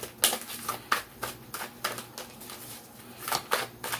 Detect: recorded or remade recorded